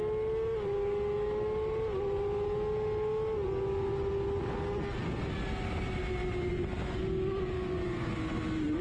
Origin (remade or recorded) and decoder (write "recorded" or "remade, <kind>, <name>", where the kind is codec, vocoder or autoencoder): recorded